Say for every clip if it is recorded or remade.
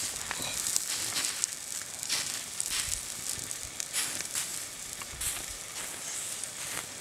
recorded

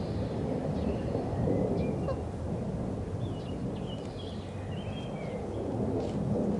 recorded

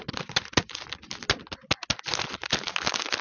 recorded